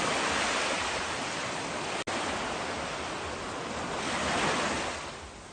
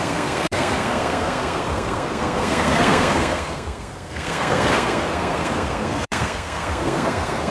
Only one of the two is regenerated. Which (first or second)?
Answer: second